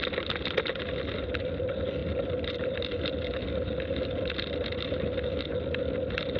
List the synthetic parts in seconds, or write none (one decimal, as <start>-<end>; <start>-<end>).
none